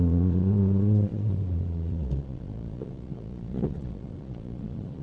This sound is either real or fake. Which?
fake